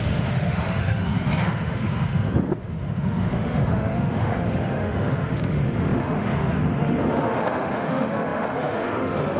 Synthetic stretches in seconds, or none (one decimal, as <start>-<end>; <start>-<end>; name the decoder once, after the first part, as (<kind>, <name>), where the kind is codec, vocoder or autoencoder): 0.0-9.4 (autoencoder, DAC-VAE)